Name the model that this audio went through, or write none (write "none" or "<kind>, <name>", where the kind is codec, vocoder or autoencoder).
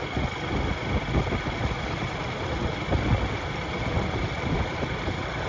none